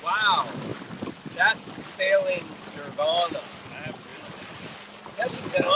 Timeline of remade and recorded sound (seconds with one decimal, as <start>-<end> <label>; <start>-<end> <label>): 0.0-5.8 recorded